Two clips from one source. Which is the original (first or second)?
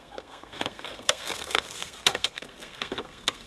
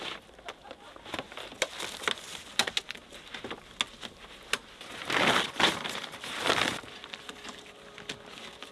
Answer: second